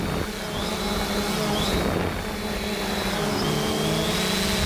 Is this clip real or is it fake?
real